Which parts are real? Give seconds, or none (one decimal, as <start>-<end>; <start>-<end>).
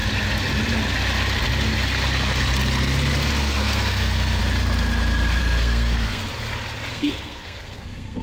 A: 0.0-3.4; 4.4-5.4; 6.2-6.9